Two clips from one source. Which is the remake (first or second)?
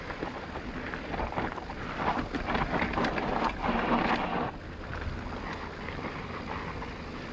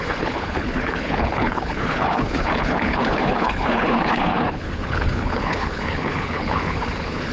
second